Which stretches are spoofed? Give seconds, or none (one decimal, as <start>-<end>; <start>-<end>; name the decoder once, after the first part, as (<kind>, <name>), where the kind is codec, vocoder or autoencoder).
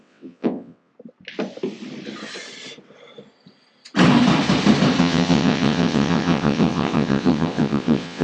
0.0-0.9 (vocoder, WaveNeXt); 5.0-8.2